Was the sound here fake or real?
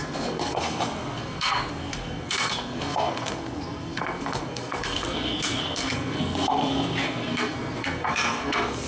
fake